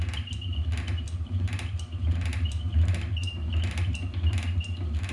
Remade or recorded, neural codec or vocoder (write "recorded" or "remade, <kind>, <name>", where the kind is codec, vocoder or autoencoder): recorded